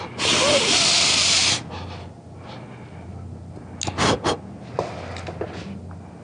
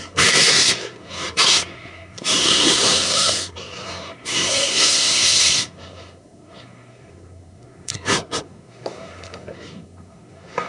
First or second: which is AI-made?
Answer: second